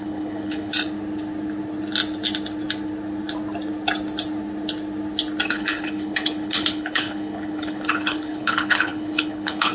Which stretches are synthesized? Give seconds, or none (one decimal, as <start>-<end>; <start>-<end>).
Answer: 0.0-0.7; 5.5-9.7